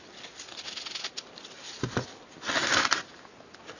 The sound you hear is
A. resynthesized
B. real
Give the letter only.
B